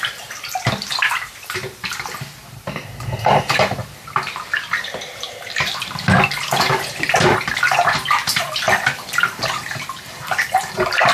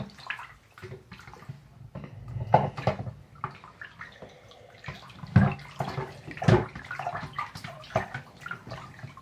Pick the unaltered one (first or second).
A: second